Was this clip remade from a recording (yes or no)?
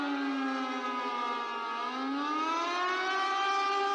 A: no